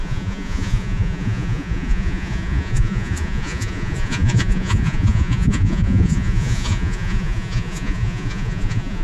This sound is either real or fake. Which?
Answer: fake